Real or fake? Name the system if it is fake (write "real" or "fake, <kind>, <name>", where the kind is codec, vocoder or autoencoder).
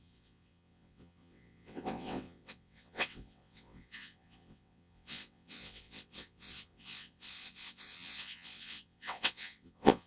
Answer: fake, vocoder, WaveNeXt